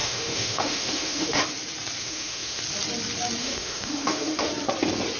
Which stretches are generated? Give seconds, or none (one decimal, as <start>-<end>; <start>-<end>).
0.0-1.4; 2.0-2.6; 3.4-4.5